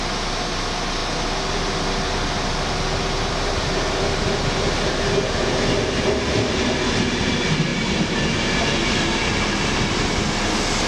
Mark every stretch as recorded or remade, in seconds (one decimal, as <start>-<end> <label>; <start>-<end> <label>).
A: 0.0-10.9 recorded